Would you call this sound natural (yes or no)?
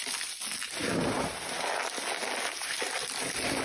yes